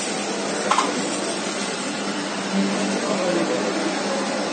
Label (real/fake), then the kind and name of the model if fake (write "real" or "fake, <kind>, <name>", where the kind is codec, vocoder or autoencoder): real